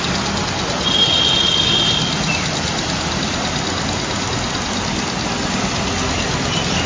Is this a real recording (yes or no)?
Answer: yes